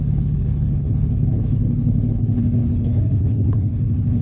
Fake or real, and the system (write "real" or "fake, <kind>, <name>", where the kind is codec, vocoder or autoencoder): fake, codec, HILCodec